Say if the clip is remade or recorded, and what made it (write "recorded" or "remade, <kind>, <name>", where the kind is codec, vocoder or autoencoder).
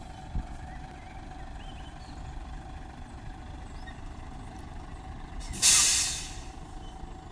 remade, vocoder, BigVGAN v2